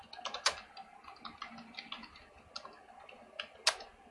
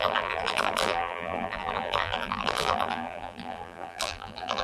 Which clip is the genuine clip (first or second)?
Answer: first